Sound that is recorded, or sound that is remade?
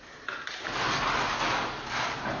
recorded